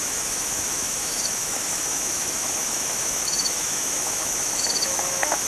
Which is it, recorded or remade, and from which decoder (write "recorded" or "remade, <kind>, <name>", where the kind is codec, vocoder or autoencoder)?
remade, autoencoder, DAC-VAE